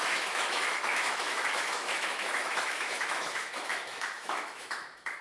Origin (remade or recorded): remade